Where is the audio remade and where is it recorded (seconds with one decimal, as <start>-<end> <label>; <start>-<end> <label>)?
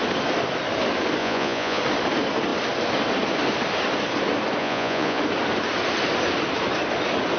0.0-1.2 recorded; 1.2-1.8 remade; 1.8-4.6 recorded; 4.6-5.2 remade; 5.2-7.4 recorded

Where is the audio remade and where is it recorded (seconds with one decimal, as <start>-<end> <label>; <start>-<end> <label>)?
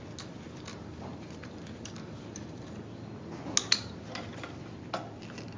0.0-0.7 recorded; 0.7-3.4 remade; 3.4-5.6 recorded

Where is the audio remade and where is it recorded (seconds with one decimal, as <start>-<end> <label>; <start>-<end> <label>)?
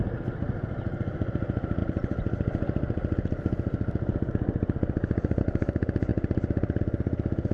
0.0-7.5 recorded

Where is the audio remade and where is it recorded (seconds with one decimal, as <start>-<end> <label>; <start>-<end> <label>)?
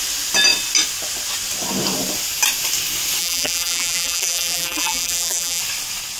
0.0-3.2 recorded; 3.2-5.6 remade; 5.6-6.2 recorded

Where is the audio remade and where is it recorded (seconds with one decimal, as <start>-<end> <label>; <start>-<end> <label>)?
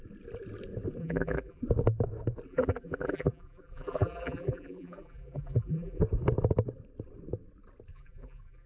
0.0-1.0 recorded; 1.0-1.6 remade; 1.6-2.5 recorded; 2.5-6.0 remade; 6.0-7.9 recorded; 7.9-8.7 remade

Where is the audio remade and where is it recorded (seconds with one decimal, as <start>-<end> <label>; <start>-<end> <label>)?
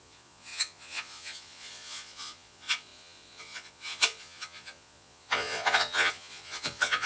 0.0-7.1 remade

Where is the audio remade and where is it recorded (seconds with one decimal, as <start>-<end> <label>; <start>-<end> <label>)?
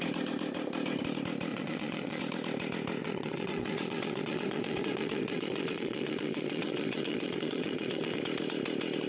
0.0-1.5 recorded; 1.5-2.2 remade; 2.2-3.0 recorded; 3.0-8.2 remade; 8.2-9.1 recorded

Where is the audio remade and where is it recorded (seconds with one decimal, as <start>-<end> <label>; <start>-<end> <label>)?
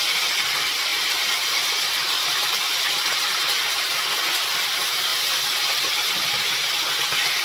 0.0-2.3 recorded; 2.3-3.9 remade; 3.9-5.1 recorded; 5.1-6.7 remade; 6.7-7.4 recorded